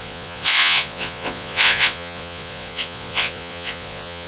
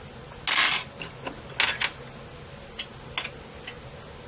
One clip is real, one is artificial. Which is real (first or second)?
second